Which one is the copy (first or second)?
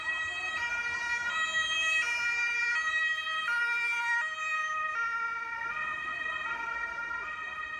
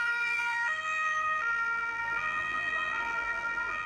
second